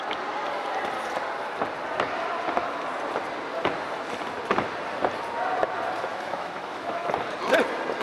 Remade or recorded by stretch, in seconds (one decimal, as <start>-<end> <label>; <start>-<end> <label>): 0.0-6.1 recorded; 6.1-7.1 remade; 7.1-8.0 recorded